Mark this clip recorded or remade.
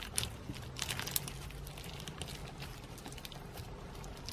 recorded